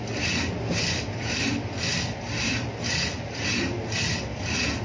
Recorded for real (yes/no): yes